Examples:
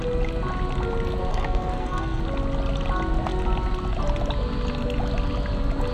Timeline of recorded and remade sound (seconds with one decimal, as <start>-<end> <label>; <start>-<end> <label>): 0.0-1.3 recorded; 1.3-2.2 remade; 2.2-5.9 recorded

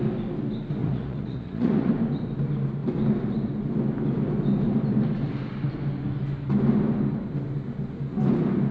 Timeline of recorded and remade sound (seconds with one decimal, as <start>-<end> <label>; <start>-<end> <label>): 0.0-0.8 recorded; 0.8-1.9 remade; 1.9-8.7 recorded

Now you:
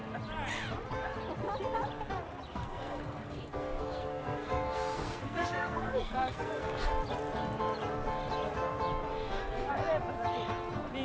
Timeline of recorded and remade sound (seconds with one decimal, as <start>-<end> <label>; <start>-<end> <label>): 0.0-2.5 recorded; 2.5-6.9 remade; 6.9-9.1 recorded; 9.1-9.7 remade; 9.7-11.0 recorded